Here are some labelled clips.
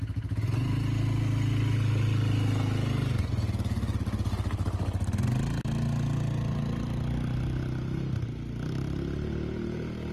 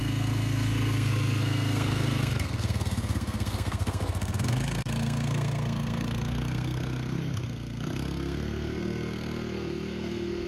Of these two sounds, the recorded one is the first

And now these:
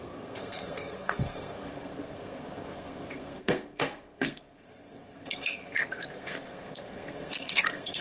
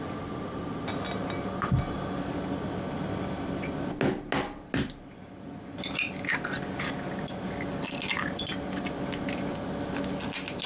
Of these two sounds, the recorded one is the second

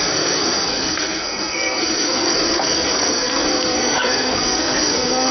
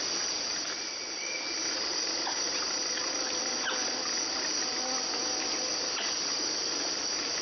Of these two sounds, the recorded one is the second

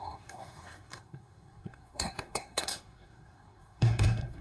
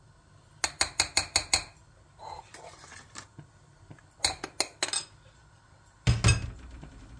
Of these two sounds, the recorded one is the second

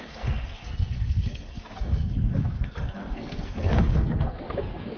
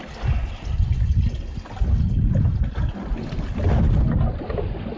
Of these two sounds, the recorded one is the second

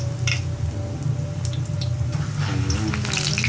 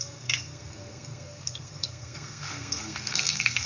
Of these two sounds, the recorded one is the first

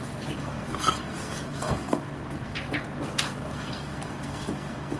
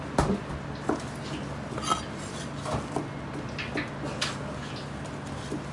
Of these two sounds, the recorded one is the second